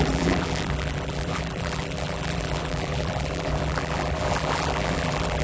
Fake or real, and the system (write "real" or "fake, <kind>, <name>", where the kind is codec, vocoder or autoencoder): fake, vocoder, BigVGAN v2